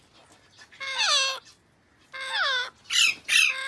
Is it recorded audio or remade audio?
recorded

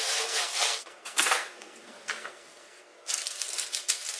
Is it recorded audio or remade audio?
remade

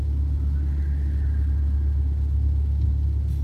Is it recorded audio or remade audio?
recorded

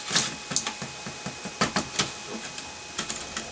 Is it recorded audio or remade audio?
recorded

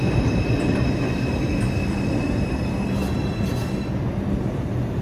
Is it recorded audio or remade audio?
recorded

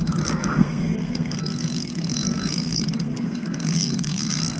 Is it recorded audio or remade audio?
remade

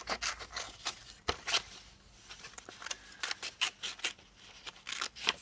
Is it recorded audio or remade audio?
recorded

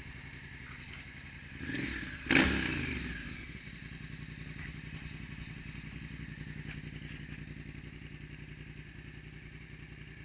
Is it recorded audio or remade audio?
recorded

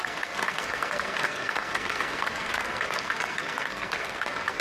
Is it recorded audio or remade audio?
remade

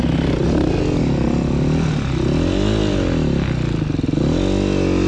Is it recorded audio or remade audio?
recorded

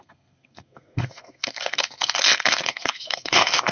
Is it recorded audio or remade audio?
remade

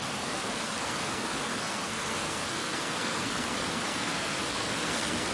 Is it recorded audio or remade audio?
remade